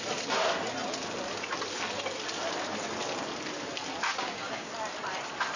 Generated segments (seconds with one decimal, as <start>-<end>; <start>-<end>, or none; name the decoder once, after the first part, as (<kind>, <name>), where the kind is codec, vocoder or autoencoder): 4.1-4.7 (codec, DAC)